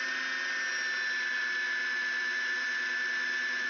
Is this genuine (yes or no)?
yes